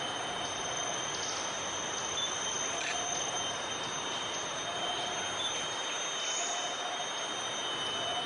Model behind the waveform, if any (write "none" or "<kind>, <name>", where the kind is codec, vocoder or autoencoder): none